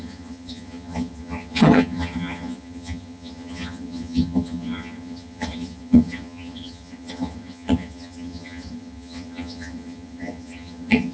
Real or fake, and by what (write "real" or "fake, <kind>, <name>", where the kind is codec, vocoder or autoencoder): fake, vocoder, HiFi-GAN